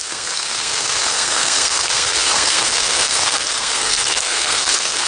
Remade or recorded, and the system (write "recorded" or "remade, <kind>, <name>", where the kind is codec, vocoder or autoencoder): remade, codec, SNAC